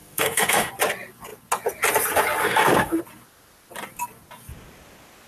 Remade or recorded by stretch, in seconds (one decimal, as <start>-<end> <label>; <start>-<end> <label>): 0.0-0.7 remade; 0.7-2.4 recorded; 2.4-3.0 remade; 3.0-5.3 recorded